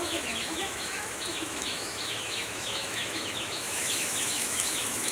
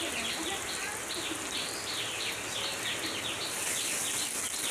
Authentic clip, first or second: second